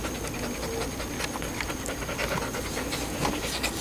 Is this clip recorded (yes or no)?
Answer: yes